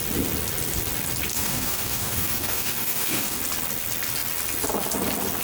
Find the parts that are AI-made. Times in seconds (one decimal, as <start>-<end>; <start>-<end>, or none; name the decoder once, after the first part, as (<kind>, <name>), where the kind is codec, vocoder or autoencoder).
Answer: 1.3-3.4 (codec, DAC)